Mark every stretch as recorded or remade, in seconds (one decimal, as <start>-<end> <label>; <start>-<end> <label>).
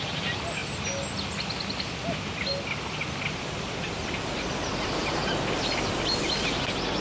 0.0-7.0 recorded